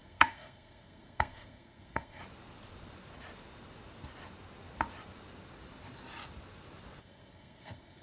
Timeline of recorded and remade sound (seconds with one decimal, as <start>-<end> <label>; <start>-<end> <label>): 0.0-2.2 remade; 2.2-7.0 recorded; 7.0-8.0 remade